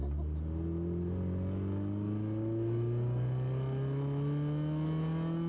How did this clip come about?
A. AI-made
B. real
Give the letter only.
B